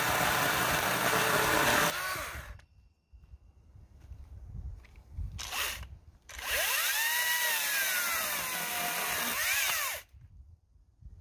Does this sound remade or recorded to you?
remade